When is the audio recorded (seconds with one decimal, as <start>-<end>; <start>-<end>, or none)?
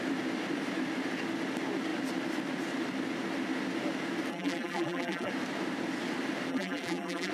0.0-4.3; 5.3-6.5